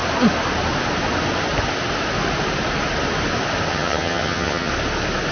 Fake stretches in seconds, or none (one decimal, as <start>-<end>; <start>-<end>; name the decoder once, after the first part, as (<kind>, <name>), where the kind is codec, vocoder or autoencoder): 3.7-4.7 (vocoder, HiFi-GAN)